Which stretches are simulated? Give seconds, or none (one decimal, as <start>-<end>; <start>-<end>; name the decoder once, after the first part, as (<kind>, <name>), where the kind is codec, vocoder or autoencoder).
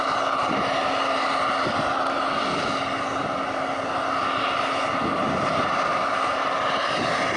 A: none